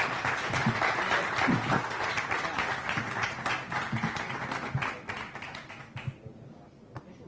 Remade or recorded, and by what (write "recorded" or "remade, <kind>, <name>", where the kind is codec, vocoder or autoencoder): recorded